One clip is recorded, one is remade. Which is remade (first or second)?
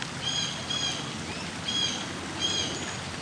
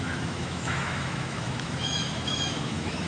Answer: second